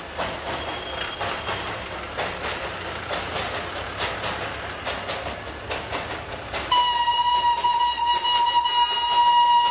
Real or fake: real